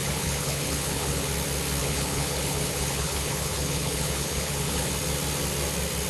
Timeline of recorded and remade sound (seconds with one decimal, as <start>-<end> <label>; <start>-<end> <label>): 0.0-1.3 remade; 1.3-1.8 recorded; 1.8-4.9 remade; 4.9-6.1 recorded